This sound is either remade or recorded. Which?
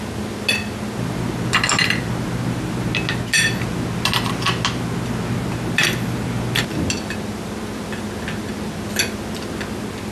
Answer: recorded